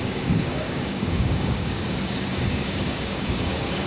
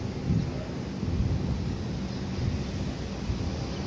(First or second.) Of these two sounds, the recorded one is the second